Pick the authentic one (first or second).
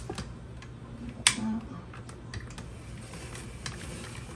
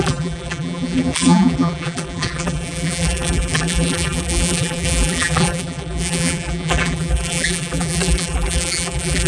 first